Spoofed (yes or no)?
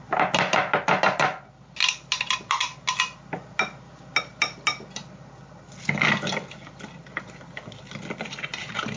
no